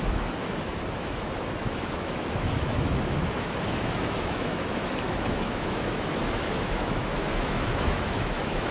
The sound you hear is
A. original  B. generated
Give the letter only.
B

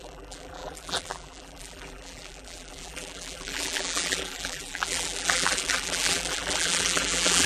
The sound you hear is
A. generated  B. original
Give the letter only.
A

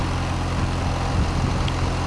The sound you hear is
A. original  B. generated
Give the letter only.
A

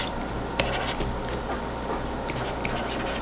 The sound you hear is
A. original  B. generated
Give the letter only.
A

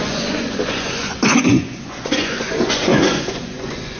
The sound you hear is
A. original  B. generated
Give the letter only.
B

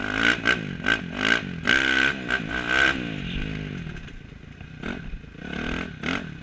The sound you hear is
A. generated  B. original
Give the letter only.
B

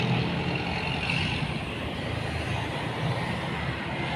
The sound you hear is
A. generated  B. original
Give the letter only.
B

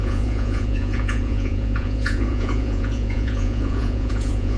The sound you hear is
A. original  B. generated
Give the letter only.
B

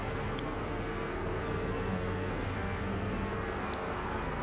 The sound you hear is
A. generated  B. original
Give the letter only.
A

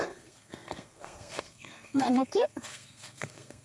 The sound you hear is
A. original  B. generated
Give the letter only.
B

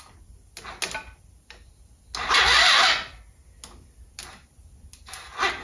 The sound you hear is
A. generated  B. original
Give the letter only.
B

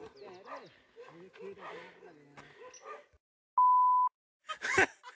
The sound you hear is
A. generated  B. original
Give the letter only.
B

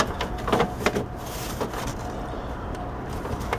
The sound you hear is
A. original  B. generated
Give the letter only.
A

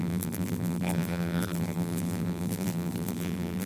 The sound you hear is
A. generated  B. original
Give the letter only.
A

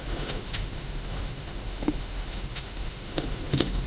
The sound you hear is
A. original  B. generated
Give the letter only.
B